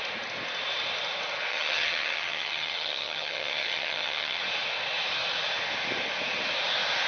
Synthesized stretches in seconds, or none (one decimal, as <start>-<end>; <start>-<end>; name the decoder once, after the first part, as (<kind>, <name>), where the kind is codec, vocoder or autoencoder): 1.5-4.4 (vocoder, HiFi-GAN)